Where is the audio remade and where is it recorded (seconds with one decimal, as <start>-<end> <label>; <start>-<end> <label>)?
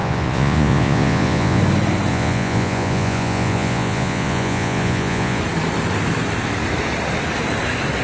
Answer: 0.0-1.6 remade; 1.6-2.1 recorded; 2.1-5.4 remade; 5.4-8.0 recorded